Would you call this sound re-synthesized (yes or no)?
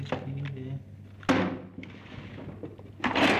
no